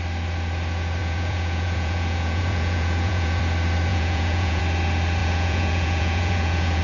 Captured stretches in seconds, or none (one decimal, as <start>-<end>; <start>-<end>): 0.0-1.0; 3.4-3.9; 4.6-5.2